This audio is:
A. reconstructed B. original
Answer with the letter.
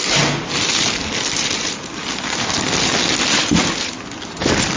B